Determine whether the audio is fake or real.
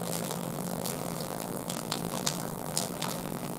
fake